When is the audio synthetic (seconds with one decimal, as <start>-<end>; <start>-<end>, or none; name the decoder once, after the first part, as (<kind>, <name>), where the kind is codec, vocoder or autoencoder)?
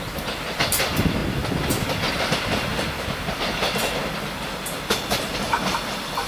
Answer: 2.7-3.2 (vocoder, BigVGAN v2)